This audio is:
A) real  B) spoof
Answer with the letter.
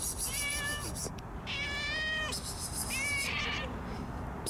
A